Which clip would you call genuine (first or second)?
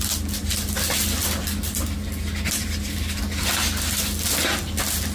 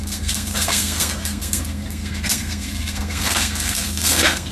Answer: first